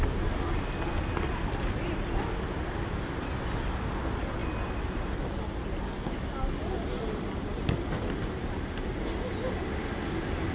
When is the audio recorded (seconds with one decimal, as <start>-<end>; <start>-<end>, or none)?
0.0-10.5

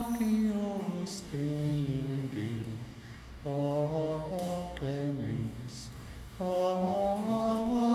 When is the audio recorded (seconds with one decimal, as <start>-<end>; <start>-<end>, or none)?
0.0-0.8

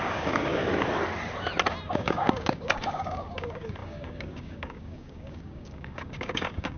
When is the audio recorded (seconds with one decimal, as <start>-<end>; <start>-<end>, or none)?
0.6-1.9